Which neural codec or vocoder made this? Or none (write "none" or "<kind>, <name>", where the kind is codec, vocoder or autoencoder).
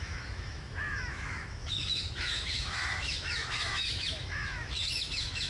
autoencoder, DAC-VAE